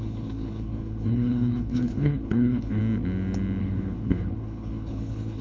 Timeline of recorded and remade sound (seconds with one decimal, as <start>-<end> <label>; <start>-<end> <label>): 0.0-2.8 remade; 2.8-3.6 recorded; 3.6-5.4 remade